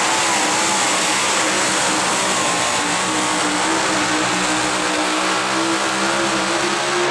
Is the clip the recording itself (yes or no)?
yes